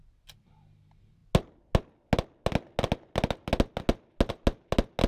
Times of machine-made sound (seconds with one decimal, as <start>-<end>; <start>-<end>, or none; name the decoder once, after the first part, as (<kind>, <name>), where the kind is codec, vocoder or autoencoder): none